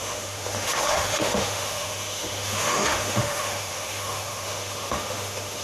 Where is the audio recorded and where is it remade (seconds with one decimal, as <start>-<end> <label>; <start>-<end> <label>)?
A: 0.0-5.6 remade